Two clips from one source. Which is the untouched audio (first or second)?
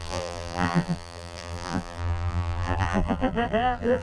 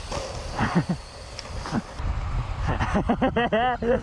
second